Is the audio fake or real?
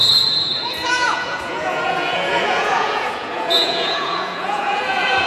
fake